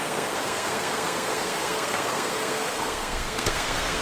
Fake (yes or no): yes